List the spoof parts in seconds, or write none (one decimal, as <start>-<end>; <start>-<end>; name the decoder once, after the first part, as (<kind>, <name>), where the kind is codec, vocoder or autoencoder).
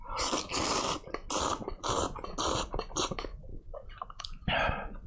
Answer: 0.0-1.2 (vocoder, BigVGAN v2); 3.0-5.1